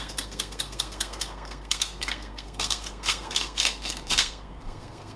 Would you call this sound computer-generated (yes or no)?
yes